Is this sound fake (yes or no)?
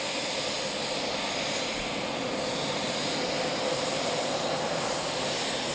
no